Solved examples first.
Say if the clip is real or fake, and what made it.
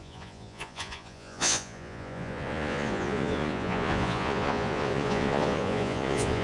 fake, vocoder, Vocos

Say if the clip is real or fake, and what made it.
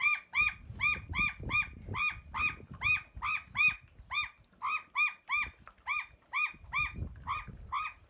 real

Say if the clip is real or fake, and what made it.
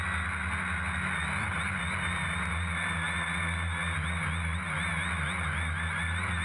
real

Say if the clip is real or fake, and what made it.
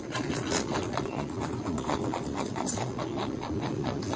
fake, vocoder, Vocos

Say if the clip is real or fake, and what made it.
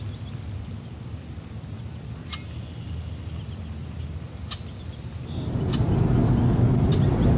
real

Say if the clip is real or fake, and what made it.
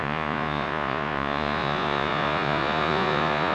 fake, vocoder, Vocos